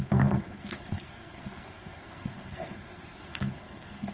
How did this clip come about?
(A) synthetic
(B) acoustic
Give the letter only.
A